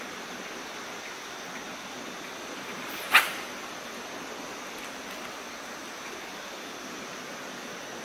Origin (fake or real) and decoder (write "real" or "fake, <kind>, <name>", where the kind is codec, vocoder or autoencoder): real